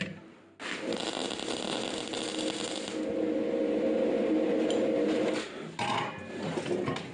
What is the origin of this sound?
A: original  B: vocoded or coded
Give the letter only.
A